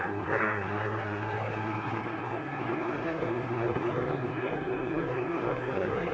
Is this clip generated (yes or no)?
yes